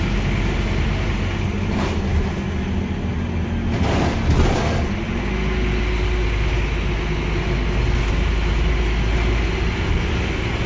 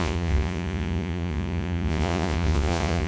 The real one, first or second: first